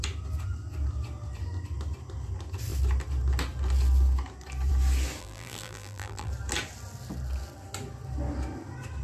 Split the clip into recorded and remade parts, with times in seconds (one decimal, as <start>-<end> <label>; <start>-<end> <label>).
0.0-5.2 recorded; 5.2-6.3 remade; 6.3-9.0 recorded

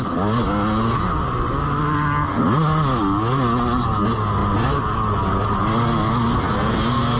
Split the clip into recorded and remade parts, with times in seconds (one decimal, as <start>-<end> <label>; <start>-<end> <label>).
0.0-7.2 recorded

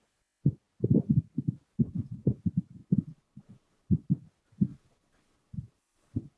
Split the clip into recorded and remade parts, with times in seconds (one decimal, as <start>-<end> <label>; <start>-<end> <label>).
0.0-1.8 recorded; 1.8-2.4 remade; 2.4-2.8 recorded; 2.8-4.1 remade; 4.1-4.7 recorded; 4.7-6.4 remade

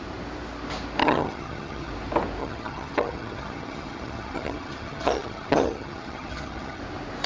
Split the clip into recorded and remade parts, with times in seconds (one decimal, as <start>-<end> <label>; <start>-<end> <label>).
0.0-1.0 recorded; 1.0-1.9 remade; 1.9-2.4 recorded; 2.4-6.8 remade; 6.8-7.3 recorded

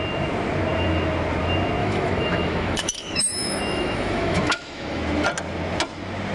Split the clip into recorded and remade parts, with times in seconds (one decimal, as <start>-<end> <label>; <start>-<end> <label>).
0.0-1.8 recorded; 1.8-5.0 remade; 5.0-6.3 recorded

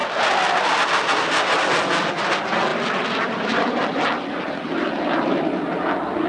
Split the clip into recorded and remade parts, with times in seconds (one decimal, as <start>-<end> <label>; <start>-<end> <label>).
0.0-2.7 recorded; 2.7-5.3 remade; 5.3-6.3 recorded